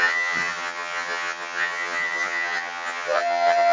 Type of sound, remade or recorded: remade